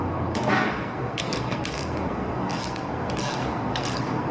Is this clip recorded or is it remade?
remade